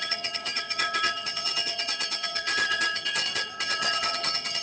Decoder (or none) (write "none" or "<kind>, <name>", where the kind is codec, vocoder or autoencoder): vocoder, HiFi-GAN